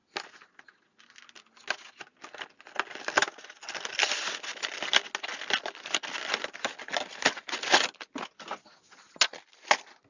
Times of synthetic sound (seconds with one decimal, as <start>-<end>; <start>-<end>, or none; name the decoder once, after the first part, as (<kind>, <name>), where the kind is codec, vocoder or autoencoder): none